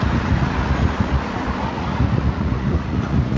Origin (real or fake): fake